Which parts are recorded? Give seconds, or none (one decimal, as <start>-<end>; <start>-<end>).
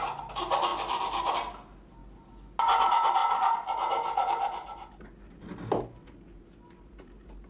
0.0-7.5